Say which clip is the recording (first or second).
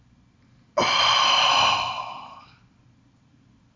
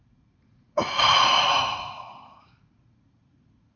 first